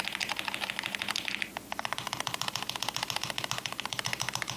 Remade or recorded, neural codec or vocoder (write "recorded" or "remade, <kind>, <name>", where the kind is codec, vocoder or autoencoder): recorded